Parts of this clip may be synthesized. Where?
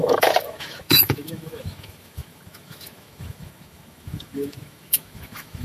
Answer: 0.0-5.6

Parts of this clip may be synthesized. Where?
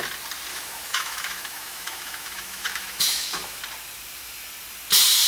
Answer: 0.5-3.6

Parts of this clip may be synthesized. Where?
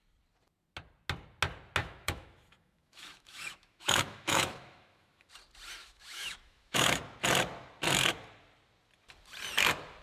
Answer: 1.8-5.3; 5.8-7.0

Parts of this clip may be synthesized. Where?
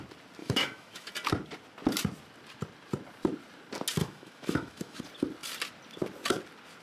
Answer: 0.4-1.1; 4.0-5.0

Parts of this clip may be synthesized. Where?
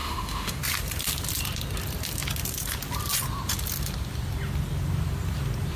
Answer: 0.0-0.6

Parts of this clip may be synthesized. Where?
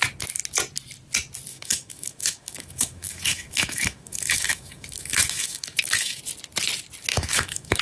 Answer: 1.5-6.2; 7.1-7.8